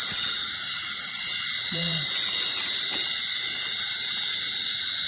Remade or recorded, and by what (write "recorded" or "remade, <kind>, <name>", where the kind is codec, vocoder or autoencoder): remade, vocoder, BigVGAN v2